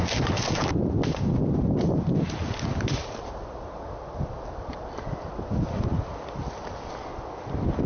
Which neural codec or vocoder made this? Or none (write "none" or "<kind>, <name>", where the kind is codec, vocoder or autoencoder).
none